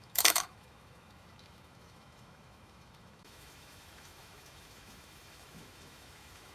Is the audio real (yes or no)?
no